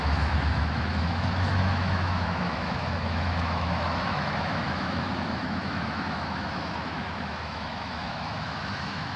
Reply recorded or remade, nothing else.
remade